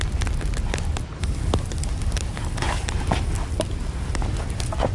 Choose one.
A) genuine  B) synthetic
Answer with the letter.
A